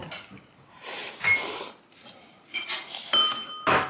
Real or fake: real